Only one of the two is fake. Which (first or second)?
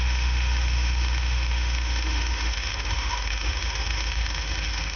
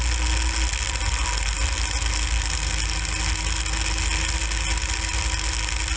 first